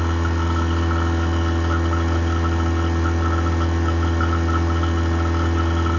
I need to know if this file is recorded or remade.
recorded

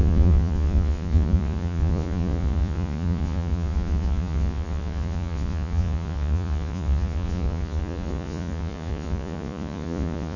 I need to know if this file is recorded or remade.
remade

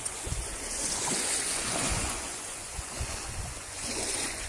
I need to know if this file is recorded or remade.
remade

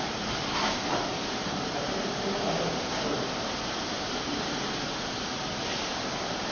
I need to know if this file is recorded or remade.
recorded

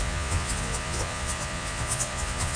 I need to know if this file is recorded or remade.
remade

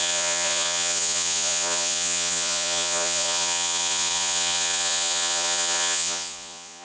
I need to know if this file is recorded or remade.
remade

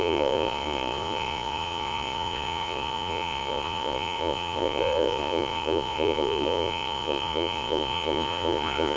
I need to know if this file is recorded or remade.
remade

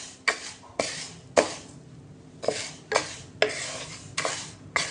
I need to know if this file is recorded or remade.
recorded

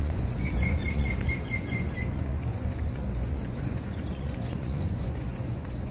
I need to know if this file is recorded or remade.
remade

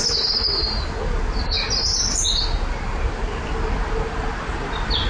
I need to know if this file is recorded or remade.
recorded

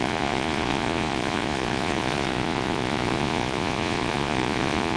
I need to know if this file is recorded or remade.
remade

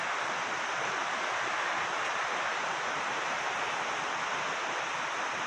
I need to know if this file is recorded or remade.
recorded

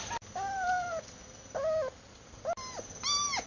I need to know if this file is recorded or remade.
recorded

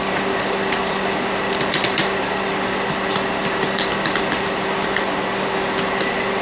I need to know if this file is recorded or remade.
recorded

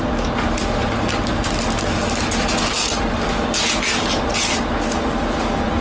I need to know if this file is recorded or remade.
recorded